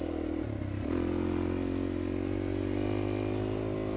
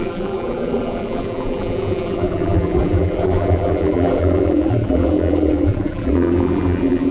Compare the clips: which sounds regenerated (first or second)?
second